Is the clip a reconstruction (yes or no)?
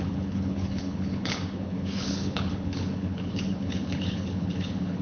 yes